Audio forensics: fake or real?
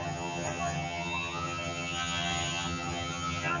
fake